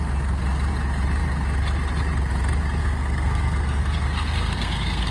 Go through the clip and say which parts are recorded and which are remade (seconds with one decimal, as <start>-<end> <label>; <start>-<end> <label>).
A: 0.0-2.8 recorded; 2.8-5.1 remade